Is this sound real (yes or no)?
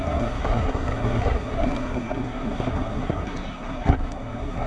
no